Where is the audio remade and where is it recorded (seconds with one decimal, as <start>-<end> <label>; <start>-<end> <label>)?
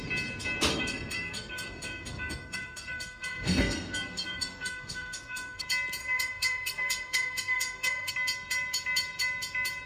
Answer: 0.0-0.7 recorded; 0.7-5.6 remade; 5.6-6.0 recorded; 6.0-8.1 remade; 8.1-9.9 recorded